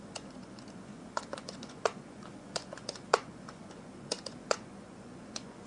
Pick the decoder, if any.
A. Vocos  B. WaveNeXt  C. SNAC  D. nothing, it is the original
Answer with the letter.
A